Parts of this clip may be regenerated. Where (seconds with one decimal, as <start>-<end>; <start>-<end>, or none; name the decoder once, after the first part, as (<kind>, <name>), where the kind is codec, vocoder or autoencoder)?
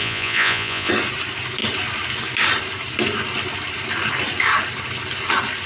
0.0-0.9 (vocoder, Vocos)